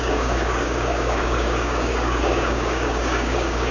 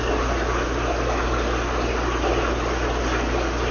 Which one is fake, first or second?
first